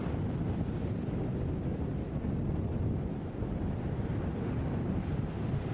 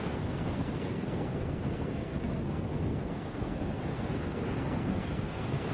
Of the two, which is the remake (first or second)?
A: second